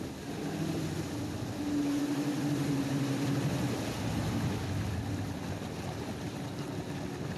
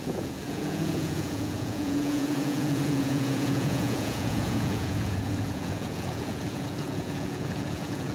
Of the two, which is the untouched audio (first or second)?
first